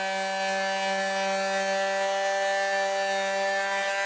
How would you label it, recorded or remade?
recorded